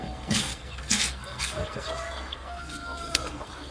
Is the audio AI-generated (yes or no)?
yes